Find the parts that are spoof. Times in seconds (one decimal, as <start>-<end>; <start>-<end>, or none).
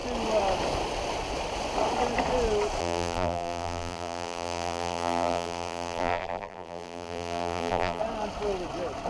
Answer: 2.8-8.0